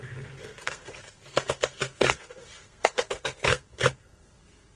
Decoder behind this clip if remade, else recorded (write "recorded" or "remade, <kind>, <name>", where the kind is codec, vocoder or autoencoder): remade, codec, SNAC